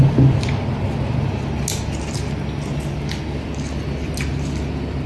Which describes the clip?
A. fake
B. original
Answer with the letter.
B